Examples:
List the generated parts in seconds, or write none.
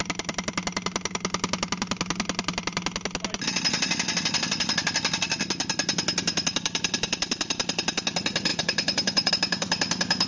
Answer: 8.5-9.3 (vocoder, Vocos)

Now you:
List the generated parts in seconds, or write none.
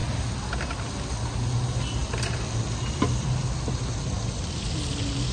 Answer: none